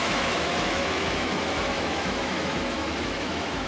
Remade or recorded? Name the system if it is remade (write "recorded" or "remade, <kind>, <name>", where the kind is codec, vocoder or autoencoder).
remade, autoencoder, DAC-VAE